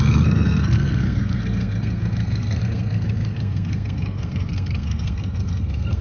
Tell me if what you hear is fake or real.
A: fake